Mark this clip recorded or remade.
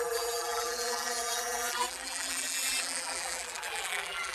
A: remade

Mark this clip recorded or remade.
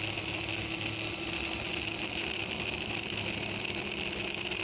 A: recorded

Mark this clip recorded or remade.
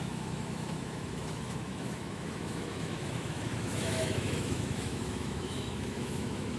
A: remade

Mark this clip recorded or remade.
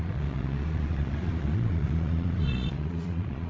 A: remade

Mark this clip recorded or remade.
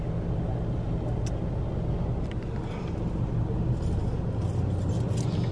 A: recorded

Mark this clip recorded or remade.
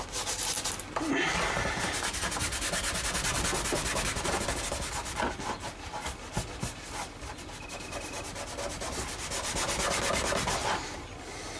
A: recorded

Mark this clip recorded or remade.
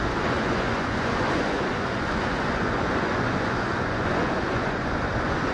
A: remade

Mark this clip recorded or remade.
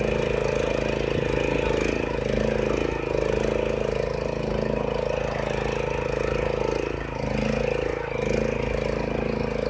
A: recorded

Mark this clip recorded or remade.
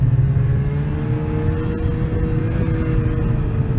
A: recorded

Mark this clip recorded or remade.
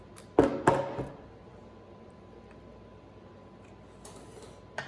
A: recorded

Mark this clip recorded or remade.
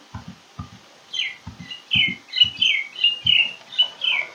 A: recorded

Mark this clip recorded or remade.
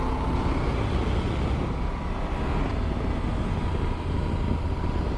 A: recorded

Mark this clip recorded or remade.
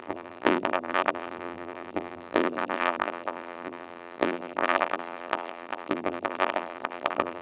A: remade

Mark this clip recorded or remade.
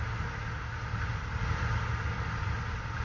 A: recorded